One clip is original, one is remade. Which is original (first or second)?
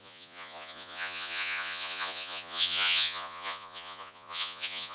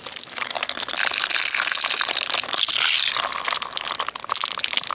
second